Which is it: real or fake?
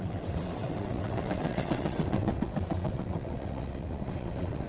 fake